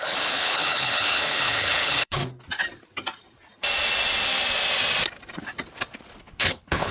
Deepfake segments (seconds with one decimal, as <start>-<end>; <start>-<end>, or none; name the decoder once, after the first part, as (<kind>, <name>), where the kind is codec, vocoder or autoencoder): 0.0-2.2 (codec, HILCodec); 6.2-6.9